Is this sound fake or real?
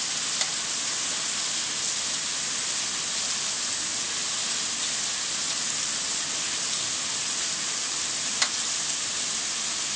real